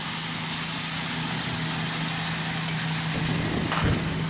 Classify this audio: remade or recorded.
recorded